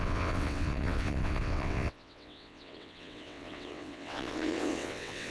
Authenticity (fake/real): fake